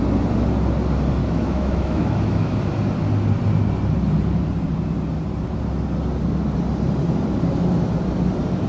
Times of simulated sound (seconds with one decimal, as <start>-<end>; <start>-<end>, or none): 1.2-2.6